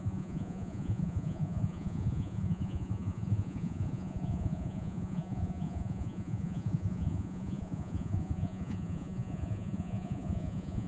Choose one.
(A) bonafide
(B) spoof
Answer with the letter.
B